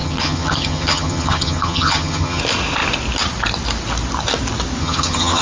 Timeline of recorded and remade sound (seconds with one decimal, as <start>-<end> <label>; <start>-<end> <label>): 0.0-2.4 remade; 2.4-4.8 recorded; 4.8-5.4 remade